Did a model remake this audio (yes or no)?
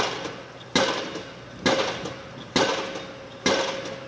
no